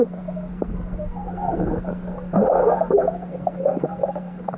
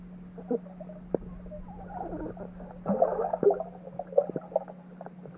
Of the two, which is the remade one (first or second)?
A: first